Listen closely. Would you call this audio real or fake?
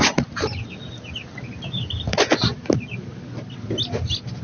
real